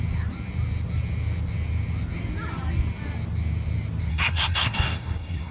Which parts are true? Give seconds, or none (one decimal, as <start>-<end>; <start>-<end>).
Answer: 0.0-4.1